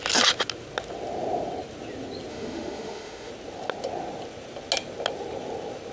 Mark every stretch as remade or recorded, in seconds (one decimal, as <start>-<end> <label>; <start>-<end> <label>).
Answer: 0.0-2.3 recorded; 2.3-3.3 remade; 3.3-5.9 recorded